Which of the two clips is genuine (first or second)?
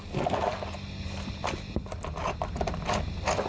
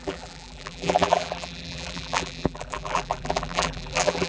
first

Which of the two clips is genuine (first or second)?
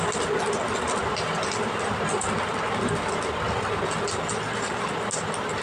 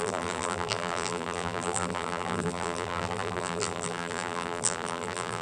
first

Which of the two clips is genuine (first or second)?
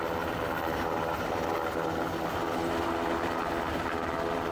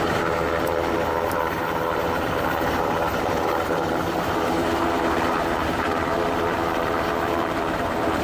first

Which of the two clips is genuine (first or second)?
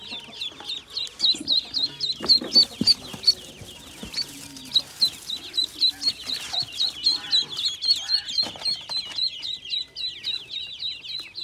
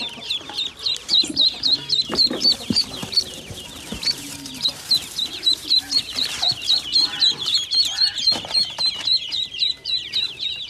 first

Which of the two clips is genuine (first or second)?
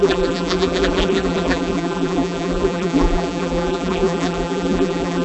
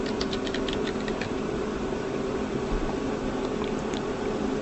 second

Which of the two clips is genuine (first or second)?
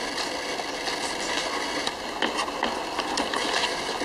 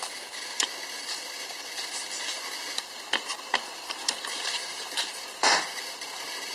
first